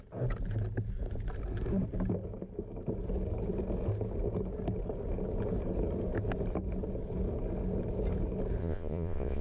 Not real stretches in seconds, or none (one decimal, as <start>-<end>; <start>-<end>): 8.6-9.4